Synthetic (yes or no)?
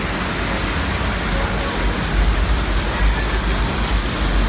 no